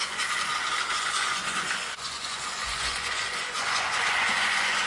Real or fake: fake